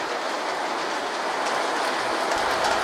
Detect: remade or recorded recorded